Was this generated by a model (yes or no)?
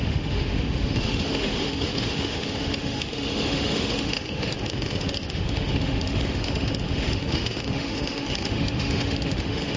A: yes